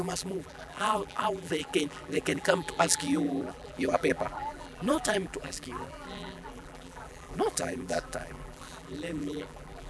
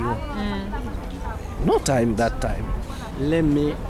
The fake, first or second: first